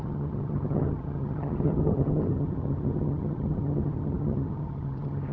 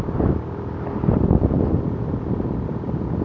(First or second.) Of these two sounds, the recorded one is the second